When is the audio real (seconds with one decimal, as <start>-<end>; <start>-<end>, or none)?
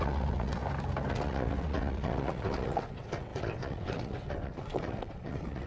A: 0.6-1.1